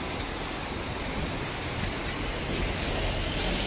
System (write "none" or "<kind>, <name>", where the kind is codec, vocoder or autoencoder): none